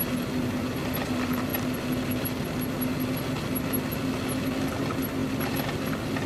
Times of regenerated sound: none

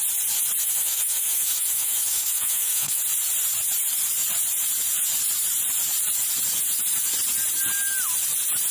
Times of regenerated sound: 0.6-3.0 (autoencoder, DAC-VAE)

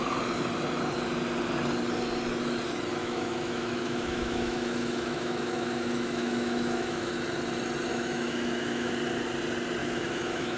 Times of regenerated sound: 3.0-7.1 (autoencoder, DAC-VAE); 7.9-8.9; 9.8-10.6